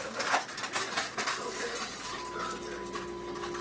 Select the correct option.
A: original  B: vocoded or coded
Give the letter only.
A